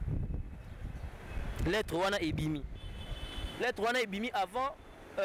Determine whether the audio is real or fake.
real